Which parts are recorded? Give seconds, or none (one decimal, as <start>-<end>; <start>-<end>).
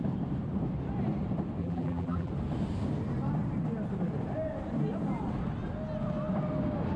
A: 0.0-1.6; 2.3-7.0